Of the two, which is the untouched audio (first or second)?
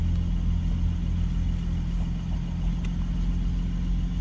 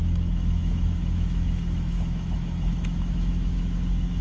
first